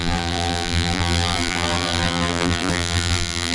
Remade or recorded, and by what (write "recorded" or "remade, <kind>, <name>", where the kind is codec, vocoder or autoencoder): remade, vocoder, BigVGAN v2